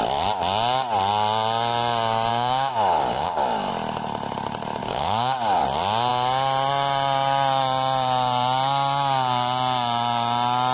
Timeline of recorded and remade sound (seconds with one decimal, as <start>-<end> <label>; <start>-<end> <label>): 0.0-2.3 recorded; 2.3-3.7 remade; 3.7-4.8 recorded; 4.8-5.6 remade; 5.6-10.7 recorded